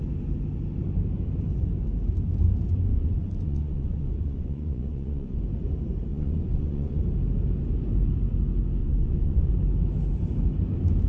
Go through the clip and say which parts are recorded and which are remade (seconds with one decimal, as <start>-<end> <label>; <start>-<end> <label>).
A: 0.0-2.9 recorded; 2.9-5.4 remade; 5.4-6.1 recorded; 6.1-7.0 remade; 7.0-8.8 recorded; 8.8-9.5 remade; 9.5-11.1 recorded